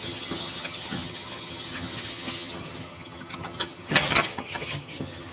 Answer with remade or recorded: remade